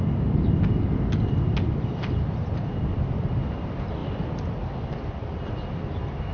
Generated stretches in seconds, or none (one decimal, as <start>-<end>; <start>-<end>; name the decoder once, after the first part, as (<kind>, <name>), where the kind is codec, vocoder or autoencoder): 0.0-6.3 (vocoder, BigVGAN v2)